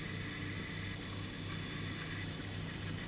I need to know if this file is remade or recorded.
recorded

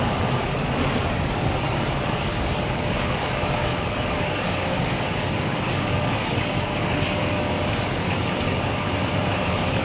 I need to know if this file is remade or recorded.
remade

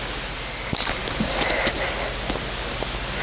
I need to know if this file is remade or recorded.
recorded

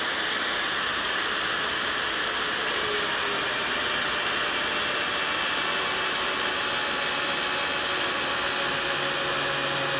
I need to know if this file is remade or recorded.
recorded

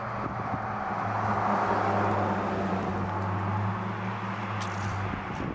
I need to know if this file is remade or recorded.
recorded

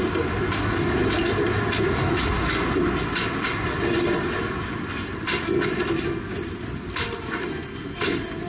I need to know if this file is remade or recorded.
recorded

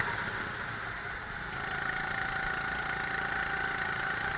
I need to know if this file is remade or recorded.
recorded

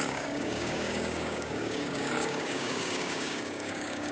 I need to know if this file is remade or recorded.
remade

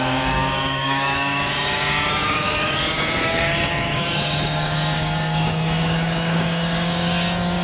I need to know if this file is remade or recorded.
remade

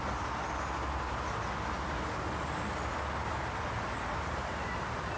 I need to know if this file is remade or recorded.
recorded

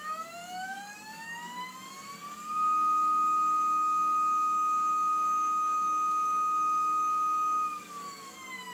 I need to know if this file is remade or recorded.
remade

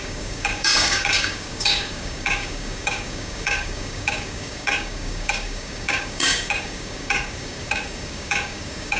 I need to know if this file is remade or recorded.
remade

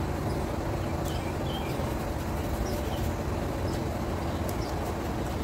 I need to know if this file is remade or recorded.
recorded